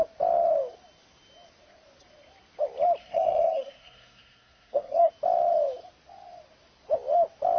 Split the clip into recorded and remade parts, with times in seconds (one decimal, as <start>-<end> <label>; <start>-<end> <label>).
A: 0.0-3.0 recorded; 3.0-5.1 remade; 5.1-7.6 recorded